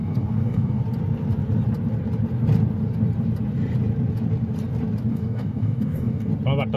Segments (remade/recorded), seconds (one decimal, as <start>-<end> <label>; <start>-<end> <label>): 0.0-0.8 remade; 0.8-5.1 recorded; 5.1-6.3 remade; 6.3-6.8 recorded